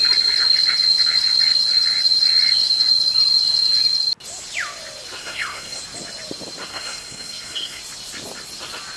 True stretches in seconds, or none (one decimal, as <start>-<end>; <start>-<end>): 0.0-5.2; 5.8-6.7; 7.8-9.0